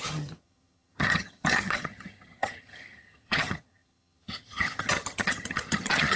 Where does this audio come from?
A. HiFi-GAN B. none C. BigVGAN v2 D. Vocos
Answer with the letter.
A